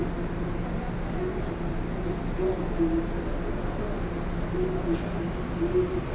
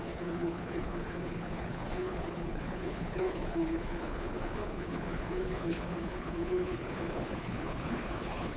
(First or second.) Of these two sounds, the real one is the first